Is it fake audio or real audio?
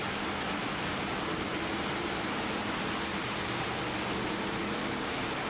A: real